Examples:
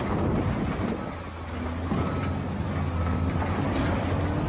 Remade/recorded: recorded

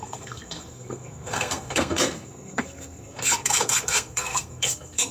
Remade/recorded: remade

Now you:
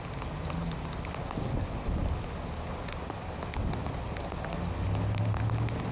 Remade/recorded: recorded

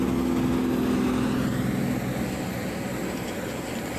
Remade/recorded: recorded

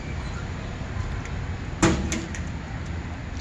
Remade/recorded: recorded